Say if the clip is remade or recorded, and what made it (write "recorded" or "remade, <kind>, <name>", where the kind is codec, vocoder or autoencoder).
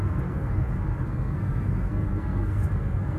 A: remade, codec, SNAC